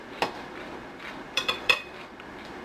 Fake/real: fake